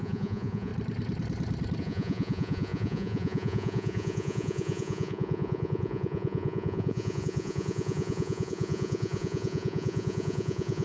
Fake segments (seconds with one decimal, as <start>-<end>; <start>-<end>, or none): 0.0-0.7; 1.8-10.8